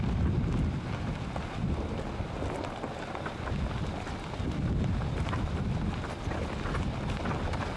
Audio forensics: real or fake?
real